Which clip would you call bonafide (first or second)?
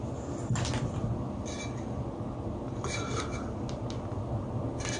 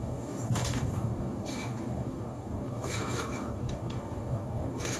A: first